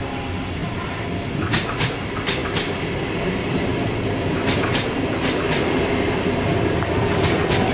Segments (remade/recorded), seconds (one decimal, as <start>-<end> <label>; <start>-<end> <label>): 0.0-7.7 recorded

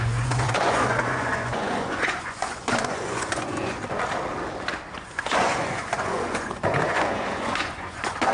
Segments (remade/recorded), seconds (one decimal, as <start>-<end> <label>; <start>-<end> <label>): 0.0-3.8 remade; 3.8-4.9 recorded; 4.9-8.3 remade

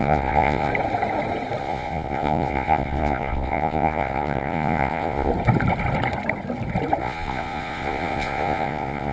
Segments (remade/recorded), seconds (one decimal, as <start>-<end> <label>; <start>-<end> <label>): 0.0-0.7 remade; 0.7-1.6 recorded; 1.6-5.3 remade; 5.3-7.0 recorded; 7.0-9.1 remade

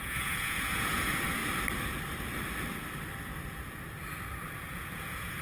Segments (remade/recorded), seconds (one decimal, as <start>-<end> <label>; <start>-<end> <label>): 0.0-1.4 remade; 1.4-4.6 recorded; 4.6-5.4 remade